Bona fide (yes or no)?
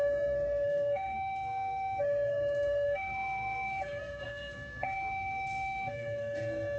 no